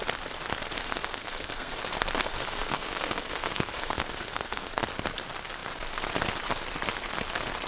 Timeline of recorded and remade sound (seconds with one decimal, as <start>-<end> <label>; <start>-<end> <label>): 0.0-0.8 recorded; 0.8-1.8 remade; 1.8-2.2 recorded; 2.2-4.7 remade; 4.7-7.7 recorded